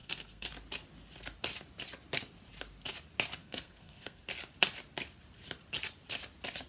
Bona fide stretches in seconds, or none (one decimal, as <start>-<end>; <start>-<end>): 0.5-3.4; 4.2-6.7